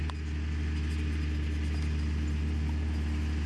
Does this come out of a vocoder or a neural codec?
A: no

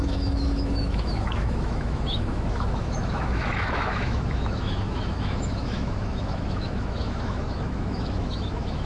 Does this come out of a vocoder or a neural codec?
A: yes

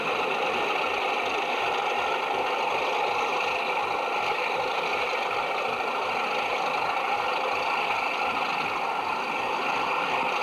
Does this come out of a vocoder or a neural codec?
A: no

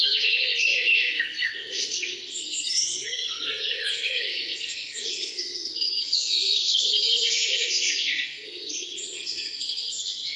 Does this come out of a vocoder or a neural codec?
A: yes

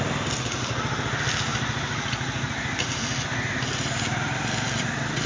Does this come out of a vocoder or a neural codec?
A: no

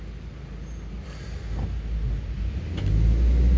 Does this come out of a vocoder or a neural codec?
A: no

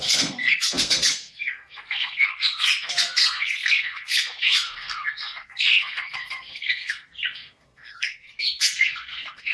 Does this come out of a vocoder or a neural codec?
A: yes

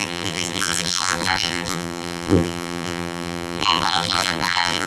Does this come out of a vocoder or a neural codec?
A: yes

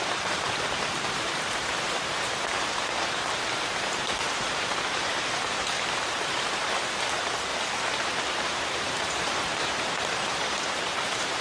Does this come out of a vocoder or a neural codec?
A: yes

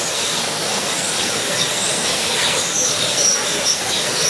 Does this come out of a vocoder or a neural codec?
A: yes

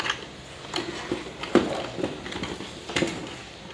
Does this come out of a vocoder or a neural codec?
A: no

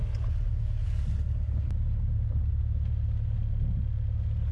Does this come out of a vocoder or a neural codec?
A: no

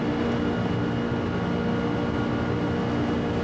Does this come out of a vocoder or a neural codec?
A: no